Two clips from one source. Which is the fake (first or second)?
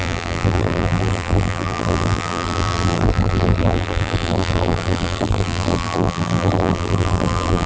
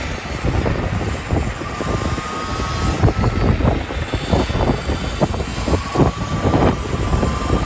first